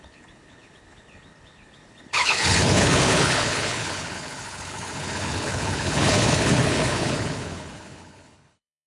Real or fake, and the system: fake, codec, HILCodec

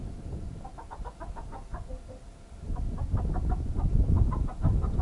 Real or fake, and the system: real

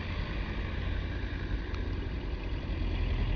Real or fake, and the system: real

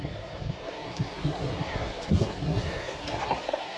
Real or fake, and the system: fake, codec, SNAC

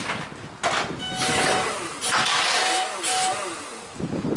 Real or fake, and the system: real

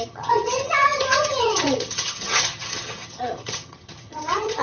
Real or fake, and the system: fake, vocoder, HiFi-GAN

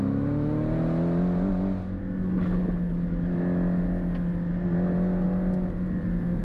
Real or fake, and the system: real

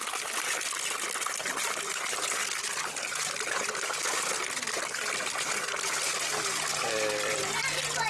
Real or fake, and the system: real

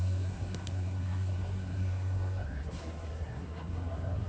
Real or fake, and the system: fake, codec, SNAC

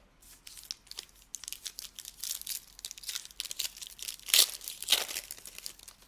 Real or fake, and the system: real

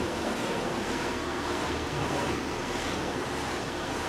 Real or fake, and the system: fake, codec, SNAC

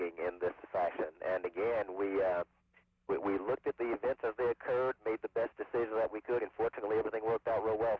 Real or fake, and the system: real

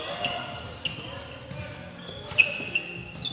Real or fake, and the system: real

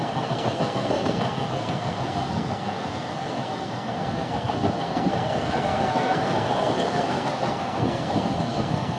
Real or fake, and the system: fake, codec, SNAC